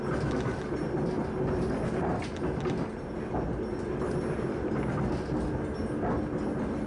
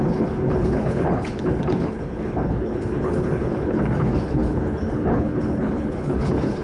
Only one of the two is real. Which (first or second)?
first